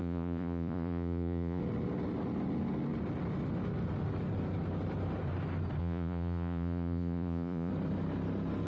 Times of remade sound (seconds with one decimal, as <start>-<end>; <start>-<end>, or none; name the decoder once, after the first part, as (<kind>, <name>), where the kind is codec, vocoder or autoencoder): 0.0-1.6 (vocoder, Vocos); 5.8-7.7